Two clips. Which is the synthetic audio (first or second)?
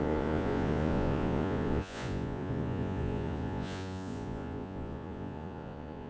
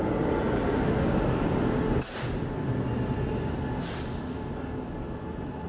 first